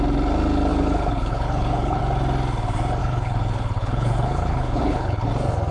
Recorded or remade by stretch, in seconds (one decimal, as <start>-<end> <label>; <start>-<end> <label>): 0.0-0.7 recorded; 0.7-2.0 remade; 2.0-3.0 recorded; 3.0-5.3 remade; 5.3-5.7 recorded